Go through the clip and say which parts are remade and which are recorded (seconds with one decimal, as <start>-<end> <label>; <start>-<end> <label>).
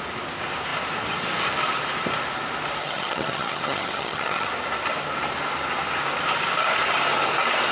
0.0-2.8 recorded; 2.8-4.5 remade; 4.5-7.7 recorded